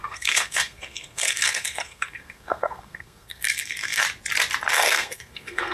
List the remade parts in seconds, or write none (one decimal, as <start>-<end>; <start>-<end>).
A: 0.0-4.0; 4.7-5.7